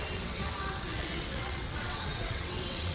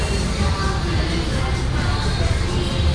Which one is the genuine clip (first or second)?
second